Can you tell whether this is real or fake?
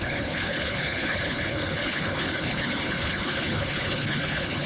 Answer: fake